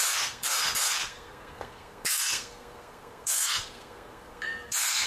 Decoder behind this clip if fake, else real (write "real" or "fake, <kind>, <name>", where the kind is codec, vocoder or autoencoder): fake, codec, SNAC